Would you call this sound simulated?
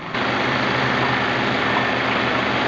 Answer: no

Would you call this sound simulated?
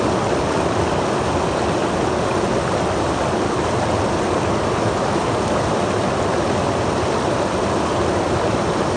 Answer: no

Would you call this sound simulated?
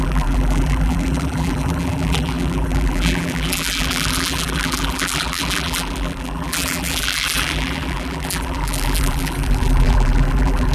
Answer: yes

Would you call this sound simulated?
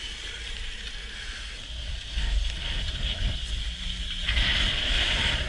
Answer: no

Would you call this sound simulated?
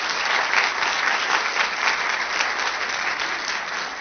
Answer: no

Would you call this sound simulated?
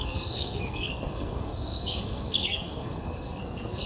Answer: yes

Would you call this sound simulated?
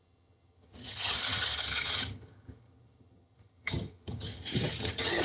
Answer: yes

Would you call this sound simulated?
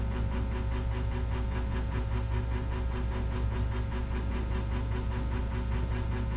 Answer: no